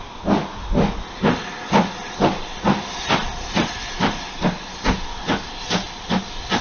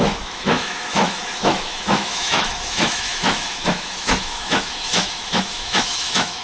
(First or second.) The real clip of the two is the first